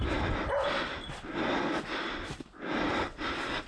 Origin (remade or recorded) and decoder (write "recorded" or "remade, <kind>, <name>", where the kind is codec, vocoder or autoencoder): recorded